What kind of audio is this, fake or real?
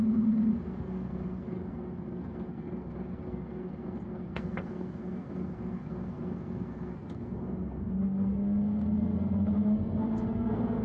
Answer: fake